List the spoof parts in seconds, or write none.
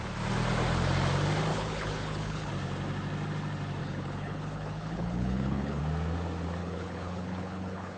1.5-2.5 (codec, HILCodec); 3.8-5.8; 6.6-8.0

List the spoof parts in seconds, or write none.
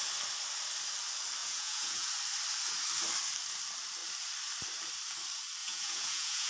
1.4-2.1 (vocoder, Vocos); 5.6-6.5